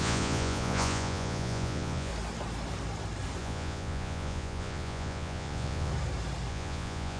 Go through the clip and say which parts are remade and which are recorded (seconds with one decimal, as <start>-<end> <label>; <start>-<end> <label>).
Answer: 0.0-2.1 remade; 2.1-3.4 recorded; 3.4-5.9 remade; 5.9-6.5 recorded; 6.5-7.2 remade